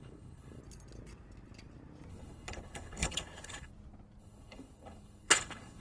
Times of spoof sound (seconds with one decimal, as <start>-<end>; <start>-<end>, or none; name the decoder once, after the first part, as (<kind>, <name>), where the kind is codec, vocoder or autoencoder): 0.0-0.6 (codec, HILCodec); 2.1-3.7; 4.2-5.8